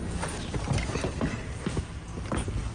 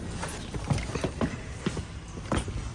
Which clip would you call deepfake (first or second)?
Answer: second